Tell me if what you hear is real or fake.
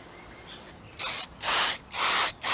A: real